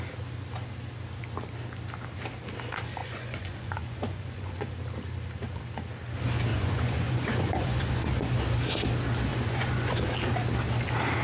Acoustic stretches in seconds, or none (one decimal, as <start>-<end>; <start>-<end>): 0.0-3.0; 4.7-6.5; 8.4-9.3; 10.0-11.2